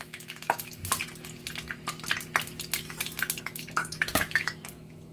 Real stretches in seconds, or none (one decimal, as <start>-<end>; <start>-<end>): 0.8-3.4